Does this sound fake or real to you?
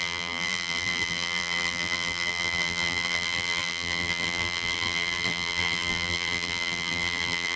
fake